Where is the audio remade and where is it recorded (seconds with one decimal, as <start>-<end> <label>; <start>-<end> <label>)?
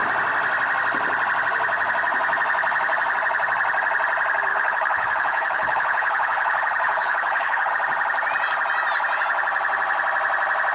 0.0-4.5 recorded; 4.5-7.7 remade; 7.7-10.7 recorded